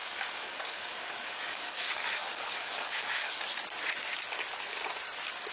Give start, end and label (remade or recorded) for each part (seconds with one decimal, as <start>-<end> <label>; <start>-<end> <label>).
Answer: 0.0-3.3 remade; 3.3-5.5 recorded